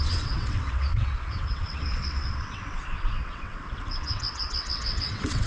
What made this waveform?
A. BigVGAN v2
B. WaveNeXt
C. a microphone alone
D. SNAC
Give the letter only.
B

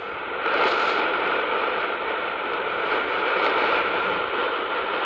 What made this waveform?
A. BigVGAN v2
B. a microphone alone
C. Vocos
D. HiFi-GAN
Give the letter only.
A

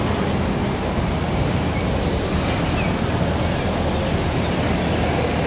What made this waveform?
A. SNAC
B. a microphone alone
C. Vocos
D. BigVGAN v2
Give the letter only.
B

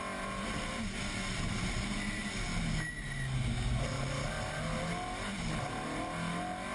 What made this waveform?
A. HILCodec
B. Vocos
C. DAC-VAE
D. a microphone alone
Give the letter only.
D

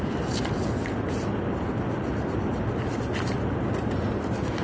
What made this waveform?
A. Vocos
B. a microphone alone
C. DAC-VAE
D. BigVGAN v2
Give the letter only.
B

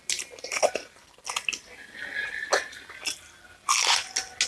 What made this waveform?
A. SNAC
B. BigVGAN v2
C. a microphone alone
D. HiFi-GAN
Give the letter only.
C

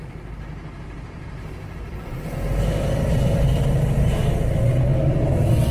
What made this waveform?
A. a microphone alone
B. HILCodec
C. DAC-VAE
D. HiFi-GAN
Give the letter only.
A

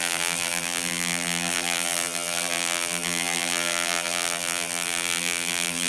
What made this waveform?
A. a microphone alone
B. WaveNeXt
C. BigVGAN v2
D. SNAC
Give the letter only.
C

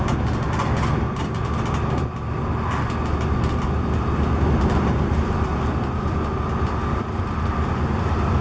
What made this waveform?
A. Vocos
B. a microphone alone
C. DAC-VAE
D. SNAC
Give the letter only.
B